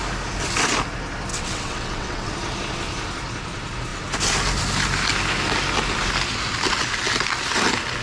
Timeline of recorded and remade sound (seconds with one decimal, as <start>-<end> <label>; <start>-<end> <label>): 0.0-1.3 recorded; 1.3-2.3 remade; 2.3-8.0 recorded